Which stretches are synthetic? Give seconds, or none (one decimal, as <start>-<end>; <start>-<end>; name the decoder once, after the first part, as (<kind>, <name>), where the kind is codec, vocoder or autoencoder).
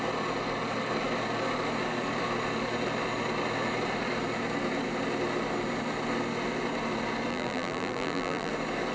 7.3-8.5 (vocoder, BigVGAN v2)